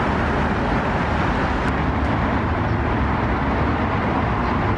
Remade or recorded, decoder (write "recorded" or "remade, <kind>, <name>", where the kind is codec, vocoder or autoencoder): recorded